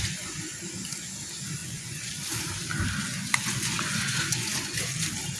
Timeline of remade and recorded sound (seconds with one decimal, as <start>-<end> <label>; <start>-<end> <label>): 0.0-1.6 recorded; 1.6-2.1 remade; 2.1-3.2 recorded; 3.2-4.9 remade; 4.9-5.4 recorded